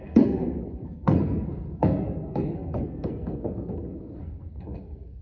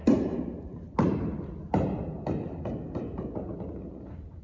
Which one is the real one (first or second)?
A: second